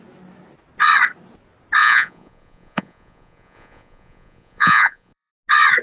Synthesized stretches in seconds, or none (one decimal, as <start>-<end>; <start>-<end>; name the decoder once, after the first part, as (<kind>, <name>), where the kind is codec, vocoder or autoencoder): 1.8-5.3 (vocoder, Vocos)